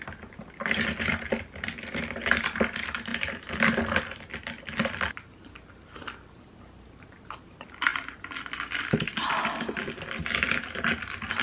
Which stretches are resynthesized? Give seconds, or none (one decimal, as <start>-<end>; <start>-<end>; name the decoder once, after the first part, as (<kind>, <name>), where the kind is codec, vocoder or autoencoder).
none